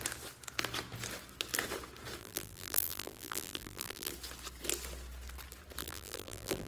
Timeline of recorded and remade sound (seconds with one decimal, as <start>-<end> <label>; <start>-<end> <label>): 0.0-2.2 recorded; 2.2-4.1 remade; 4.1-5.8 recorded; 5.8-6.7 remade